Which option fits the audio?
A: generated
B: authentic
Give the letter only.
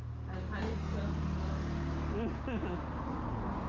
B